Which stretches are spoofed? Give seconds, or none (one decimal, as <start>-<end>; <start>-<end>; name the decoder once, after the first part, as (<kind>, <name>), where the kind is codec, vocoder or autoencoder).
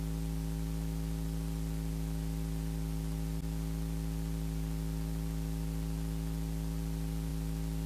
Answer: none